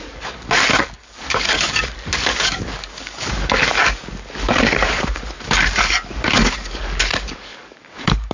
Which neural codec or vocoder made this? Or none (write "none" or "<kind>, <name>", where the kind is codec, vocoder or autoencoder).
codec, DAC